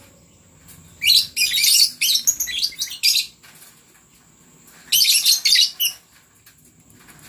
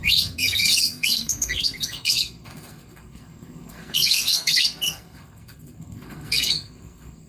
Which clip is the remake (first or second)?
second